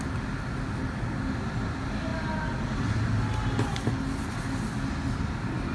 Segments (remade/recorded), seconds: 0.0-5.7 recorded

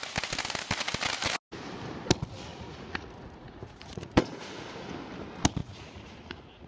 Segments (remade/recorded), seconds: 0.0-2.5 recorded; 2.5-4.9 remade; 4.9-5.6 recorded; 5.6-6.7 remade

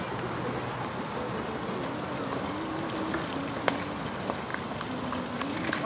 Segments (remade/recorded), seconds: 0.0-5.9 recorded